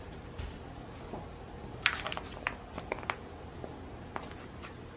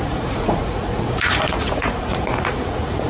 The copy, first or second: second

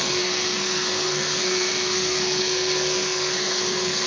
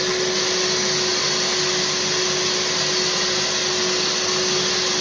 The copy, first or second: first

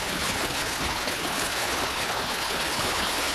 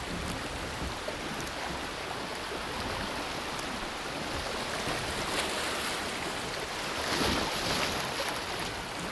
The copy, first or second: first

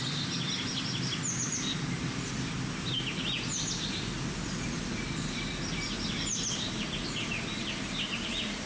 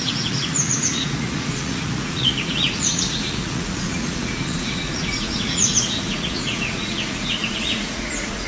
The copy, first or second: second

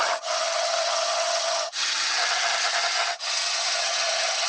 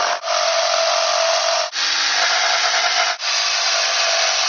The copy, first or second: first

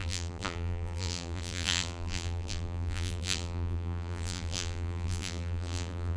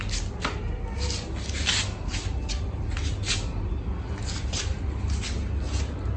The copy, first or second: first